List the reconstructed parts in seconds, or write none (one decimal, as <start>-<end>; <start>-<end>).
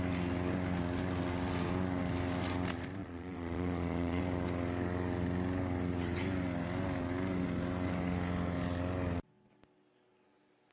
3.0-4.2